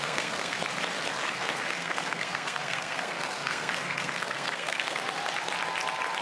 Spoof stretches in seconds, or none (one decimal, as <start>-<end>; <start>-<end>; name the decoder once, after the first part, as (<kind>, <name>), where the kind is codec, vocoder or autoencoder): 0.0-0.6 (codec, SNAC); 1.1-5.0